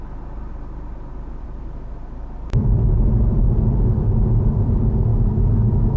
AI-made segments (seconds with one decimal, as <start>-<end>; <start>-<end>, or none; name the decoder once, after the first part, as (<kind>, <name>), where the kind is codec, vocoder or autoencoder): 5.1-6.0 (autoencoder, DAC-VAE)

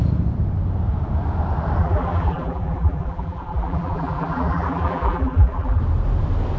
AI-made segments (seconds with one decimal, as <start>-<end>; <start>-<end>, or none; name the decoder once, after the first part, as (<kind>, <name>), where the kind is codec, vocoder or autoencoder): 1.8-5.8 (vocoder, BigVGAN v2)

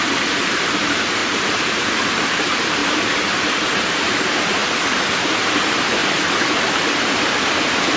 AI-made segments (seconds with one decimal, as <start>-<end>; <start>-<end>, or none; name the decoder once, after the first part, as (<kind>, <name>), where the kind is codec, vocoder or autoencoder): 0.0-2.8 (vocoder, BigVGAN v2); 3.7-4.6; 5.6-8.0

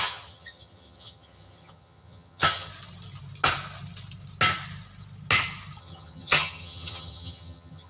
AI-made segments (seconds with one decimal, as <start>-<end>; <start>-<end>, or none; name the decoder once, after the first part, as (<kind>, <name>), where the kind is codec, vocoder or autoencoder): 0.0-2.7 (vocoder, HiFi-GAN); 5.8-7.9

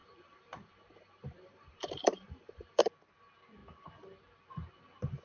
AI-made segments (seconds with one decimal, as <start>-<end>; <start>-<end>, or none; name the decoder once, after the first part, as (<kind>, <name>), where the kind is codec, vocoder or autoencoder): 0.0-2.8 (vocoder, BigVGAN v2)

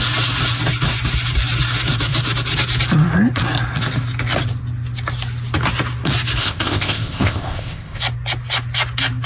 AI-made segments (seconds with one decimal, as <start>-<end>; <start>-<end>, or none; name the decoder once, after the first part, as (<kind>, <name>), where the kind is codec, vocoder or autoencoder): 6.4-8.0 (codec, ZipCodec)